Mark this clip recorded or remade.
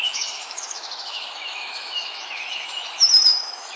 remade